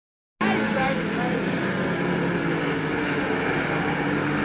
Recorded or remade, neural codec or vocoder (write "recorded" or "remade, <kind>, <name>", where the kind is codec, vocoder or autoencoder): recorded